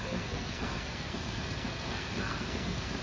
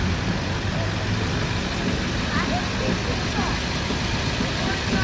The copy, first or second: first